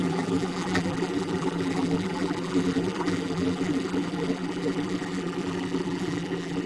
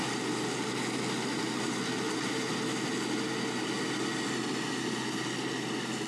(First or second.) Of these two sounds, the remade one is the first